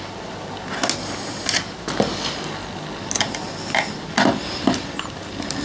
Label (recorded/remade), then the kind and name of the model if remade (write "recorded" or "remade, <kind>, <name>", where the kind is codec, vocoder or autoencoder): recorded